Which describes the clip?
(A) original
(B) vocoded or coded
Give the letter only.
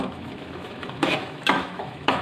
B